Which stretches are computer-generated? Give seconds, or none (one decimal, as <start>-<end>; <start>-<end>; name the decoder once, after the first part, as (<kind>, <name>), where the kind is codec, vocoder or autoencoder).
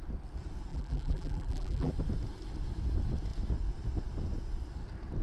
0.7-1.9 (vocoder, BigVGAN v2)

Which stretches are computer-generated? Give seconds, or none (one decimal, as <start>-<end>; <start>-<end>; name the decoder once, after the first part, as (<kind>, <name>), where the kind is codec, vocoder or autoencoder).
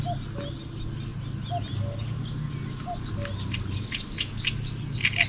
none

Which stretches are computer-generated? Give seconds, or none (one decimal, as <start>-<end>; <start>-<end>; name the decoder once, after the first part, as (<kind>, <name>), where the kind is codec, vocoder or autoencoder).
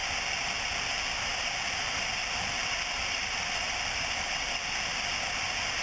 0.6-1.3 (vocoder, BigVGAN v2); 2.2-4.9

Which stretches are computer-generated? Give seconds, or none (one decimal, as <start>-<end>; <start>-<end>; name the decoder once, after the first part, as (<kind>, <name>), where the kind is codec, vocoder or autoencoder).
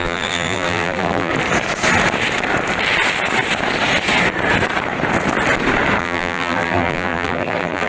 0.0-1.3 (vocoder, BigVGAN v2); 6.0-7.9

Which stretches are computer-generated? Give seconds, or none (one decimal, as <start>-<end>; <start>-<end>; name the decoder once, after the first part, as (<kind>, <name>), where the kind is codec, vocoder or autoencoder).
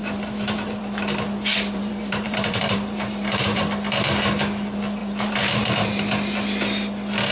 0.0-0.8 (vocoder, BigVGAN v2); 1.5-3.6; 5.0-6.0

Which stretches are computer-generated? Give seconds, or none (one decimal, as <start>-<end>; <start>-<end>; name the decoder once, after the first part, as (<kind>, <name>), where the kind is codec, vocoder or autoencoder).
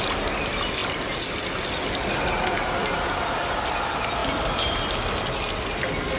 4.2-4.8 (vocoder, BigVGAN v2)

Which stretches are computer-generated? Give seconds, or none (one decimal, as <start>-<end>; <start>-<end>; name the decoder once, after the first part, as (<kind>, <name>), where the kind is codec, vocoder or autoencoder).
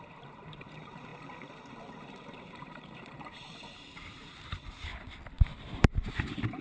0.0-1.1 (vocoder, BigVGAN v2); 2.4-4.9; 5.7-6.6